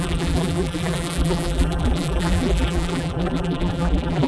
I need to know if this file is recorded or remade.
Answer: remade